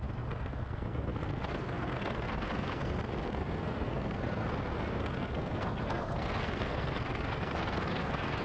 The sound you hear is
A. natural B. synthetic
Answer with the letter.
B